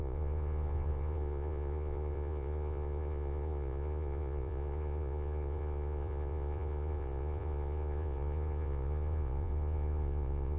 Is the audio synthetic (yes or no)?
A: yes